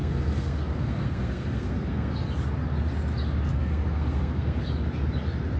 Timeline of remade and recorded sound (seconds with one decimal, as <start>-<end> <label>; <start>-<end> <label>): 0.0-2.2 remade; 2.2-3.5 recorded; 3.5-4.6 remade; 4.6-5.6 recorded